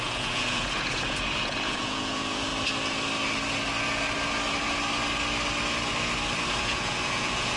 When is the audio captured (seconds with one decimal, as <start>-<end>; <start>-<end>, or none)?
2.5-6.6